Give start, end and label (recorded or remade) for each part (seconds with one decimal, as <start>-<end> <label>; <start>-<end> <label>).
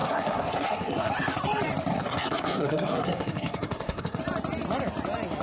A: 0.0-1.1 remade; 1.1-1.9 recorded; 1.9-4.2 remade; 4.2-5.4 recorded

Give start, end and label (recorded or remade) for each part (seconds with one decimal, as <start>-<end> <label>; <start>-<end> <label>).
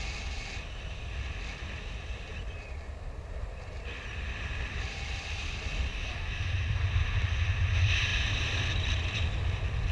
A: 0.0-2.3 recorded; 2.3-7.6 remade; 7.6-8.1 recorded; 8.1-9.2 remade; 9.2-9.9 recorded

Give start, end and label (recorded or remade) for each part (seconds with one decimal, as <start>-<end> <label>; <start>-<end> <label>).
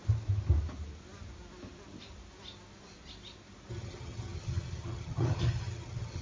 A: 0.0-3.7 recorded; 3.7-6.2 remade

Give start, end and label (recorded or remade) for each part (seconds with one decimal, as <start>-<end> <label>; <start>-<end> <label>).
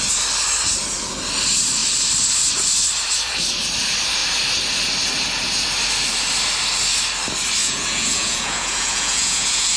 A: 0.0-7.6 recorded; 7.6-9.8 remade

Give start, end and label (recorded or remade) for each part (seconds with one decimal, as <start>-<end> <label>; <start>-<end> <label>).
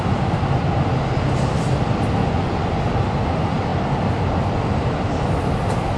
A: 0.0-2.2 recorded; 2.2-2.8 remade; 2.8-6.0 recorded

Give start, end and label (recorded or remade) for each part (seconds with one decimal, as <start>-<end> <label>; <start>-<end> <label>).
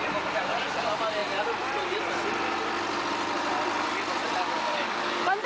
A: 0.0-4.4 recorded; 4.4-5.5 remade